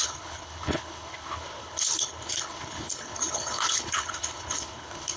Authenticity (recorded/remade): remade